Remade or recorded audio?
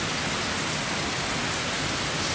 recorded